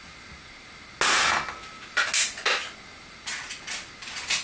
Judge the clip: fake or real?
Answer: real